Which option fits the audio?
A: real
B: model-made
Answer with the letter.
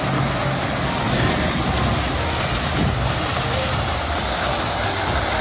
A